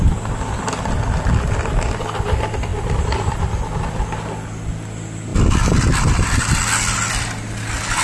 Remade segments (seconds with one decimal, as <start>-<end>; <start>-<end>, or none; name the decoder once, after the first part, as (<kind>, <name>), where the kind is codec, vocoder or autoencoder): none